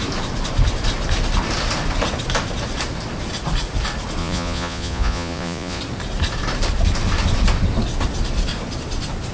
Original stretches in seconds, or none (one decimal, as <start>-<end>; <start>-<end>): 0.0-4.2; 5.8-9.3